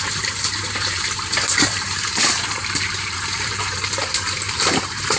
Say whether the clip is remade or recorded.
remade